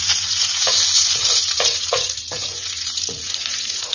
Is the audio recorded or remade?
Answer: remade